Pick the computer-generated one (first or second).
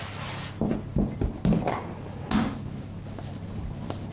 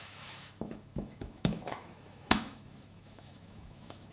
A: second